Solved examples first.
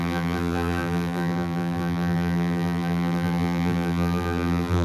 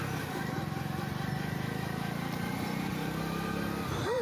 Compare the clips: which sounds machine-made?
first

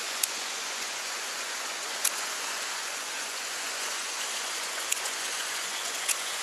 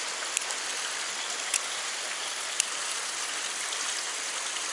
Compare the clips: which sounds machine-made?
first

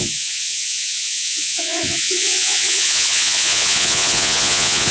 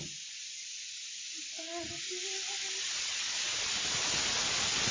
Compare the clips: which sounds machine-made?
first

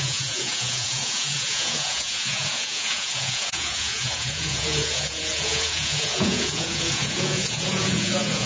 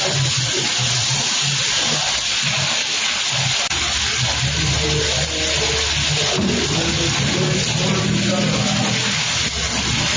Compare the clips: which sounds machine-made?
first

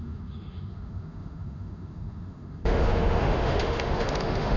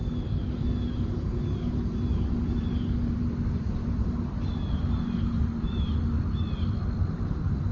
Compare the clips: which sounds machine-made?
first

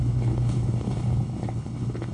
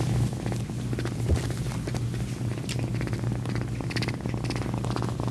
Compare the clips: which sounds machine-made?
first